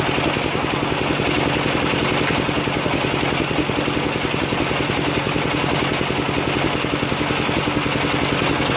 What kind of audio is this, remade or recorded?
recorded